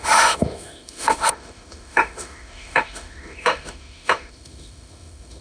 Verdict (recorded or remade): remade